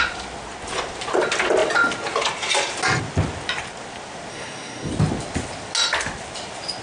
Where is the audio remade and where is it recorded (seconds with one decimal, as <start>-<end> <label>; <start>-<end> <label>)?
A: 0.0-4.3 recorded; 4.3-4.9 remade; 4.9-6.8 recorded